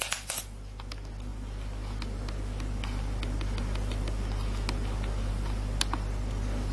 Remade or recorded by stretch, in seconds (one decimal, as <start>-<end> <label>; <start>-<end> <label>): 0.0-6.7 recorded